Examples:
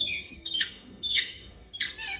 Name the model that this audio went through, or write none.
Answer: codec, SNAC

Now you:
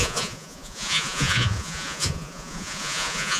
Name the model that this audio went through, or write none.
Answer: vocoder, Vocos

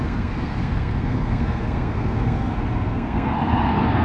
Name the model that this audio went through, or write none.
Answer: codec, SNAC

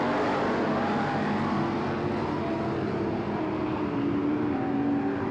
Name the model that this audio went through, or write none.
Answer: none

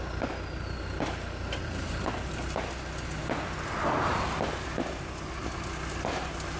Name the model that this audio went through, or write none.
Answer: none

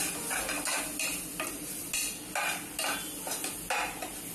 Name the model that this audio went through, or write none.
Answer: none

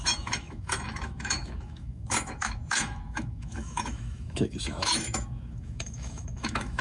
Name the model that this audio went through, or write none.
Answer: autoencoder, DAC-VAE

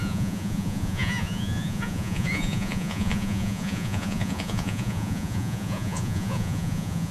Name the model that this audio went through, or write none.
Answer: vocoder, Vocos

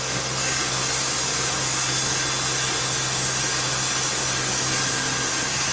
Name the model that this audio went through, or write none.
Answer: none